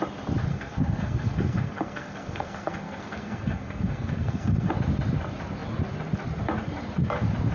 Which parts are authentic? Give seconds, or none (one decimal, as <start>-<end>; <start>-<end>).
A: 0.0-0.5; 4.7-7.5